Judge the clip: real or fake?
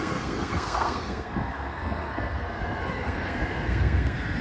fake